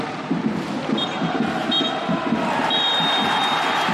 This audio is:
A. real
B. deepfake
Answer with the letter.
A